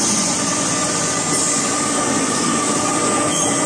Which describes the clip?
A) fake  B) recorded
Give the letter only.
A